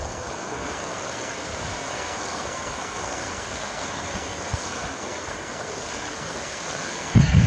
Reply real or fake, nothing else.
fake